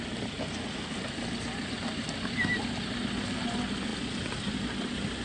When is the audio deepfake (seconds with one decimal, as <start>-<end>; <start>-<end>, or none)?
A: 3.9-4.6